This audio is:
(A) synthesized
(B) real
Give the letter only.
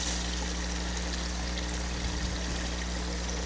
B